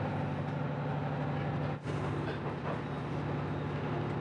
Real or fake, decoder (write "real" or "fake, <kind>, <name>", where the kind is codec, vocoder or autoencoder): real